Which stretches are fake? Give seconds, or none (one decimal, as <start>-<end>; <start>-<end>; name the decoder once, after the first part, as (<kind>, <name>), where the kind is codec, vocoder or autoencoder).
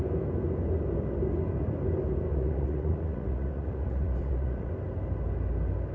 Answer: 2.3-4.7 (vocoder, Vocos)